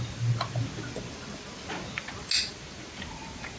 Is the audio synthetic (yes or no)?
no